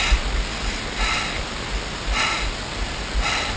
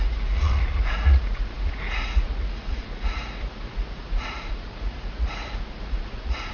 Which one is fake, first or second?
second